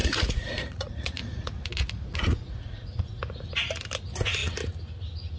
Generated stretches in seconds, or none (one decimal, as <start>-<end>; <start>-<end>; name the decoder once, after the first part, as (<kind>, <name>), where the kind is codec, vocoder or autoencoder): 0.0-3.2 (vocoder, Vocos)

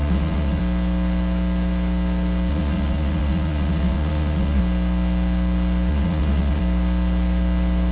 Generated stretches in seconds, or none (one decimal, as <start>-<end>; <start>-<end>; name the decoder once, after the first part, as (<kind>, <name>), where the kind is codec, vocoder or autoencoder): 0.0-0.6 (vocoder, Vocos); 2.5-4.6; 5.9-6.6

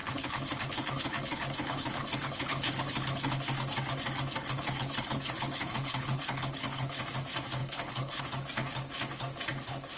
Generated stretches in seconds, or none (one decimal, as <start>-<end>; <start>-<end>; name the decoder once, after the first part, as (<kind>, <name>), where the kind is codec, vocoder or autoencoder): 0.0-3.3 (codec, HILCodec); 4.4-7.0; 7.6-8.2

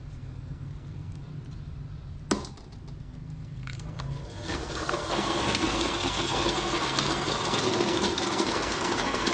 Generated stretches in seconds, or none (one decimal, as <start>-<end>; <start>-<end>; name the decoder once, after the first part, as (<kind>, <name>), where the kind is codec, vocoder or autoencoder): 0.0-1.3 (codec, SNAC); 3.0-9.3